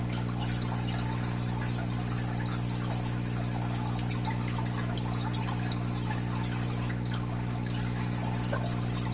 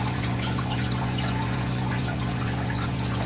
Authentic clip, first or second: first